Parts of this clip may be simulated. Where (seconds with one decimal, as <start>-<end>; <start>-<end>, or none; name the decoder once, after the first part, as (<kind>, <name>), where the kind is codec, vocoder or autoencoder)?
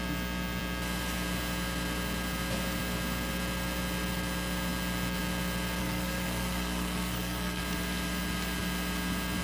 5.8-7.6 (codec, SNAC)